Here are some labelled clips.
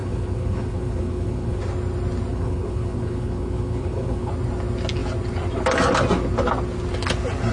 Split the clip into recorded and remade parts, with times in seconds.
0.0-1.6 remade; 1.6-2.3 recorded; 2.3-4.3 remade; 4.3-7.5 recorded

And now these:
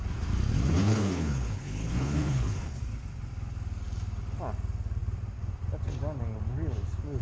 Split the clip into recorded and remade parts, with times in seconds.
0.0-0.7 recorded; 0.7-2.8 remade; 2.8-7.2 recorded

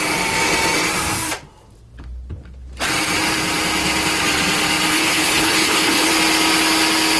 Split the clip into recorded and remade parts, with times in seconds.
0.0-4.9 recorded; 4.9-6.1 remade; 6.1-7.2 recorded